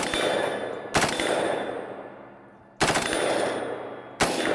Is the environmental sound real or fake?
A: real